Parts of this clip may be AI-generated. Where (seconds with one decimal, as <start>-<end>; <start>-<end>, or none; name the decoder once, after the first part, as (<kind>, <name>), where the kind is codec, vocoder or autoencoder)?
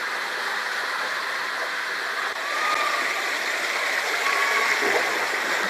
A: none